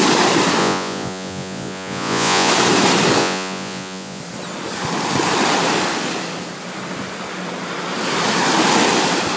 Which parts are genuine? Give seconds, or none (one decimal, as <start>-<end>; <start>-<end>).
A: 0.0-0.6; 2.5-3.2; 4.2-9.4